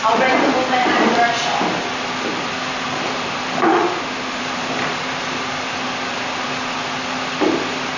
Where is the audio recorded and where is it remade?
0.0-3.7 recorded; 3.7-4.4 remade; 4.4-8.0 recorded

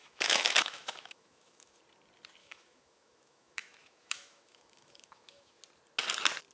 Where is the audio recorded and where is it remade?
0.0-1.8 remade; 1.8-2.4 recorded; 2.4-5.6 remade; 5.6-6.5 recorded